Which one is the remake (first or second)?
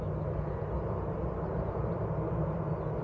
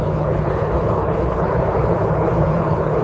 second